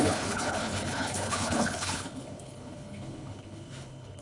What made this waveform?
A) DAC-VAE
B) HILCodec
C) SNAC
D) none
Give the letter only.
B